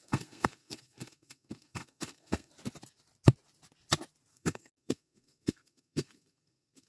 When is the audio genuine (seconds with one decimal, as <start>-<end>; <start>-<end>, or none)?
2.5-4.3